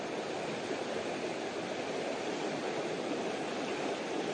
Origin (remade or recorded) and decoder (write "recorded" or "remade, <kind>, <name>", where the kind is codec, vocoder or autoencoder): recorded